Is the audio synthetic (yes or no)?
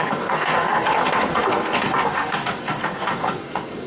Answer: yes